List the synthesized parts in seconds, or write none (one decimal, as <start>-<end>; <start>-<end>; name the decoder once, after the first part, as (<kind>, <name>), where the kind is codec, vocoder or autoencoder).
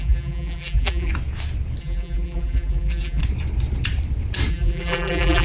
0.0-1.1 (vocoder, BigVGAN v2); 1.8-3.2; 4.5-5.4